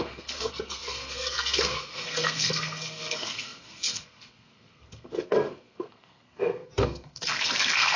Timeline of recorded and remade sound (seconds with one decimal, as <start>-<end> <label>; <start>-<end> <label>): 0.0-8.0 remade